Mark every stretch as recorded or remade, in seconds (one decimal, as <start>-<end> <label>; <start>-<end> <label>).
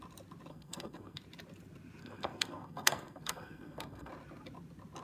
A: 0.0-0.5 recorded; 0.5-1.2 remade; 1.2-2.0 recorded; 2.0-4.1 remade; 4.1-5.0 recorded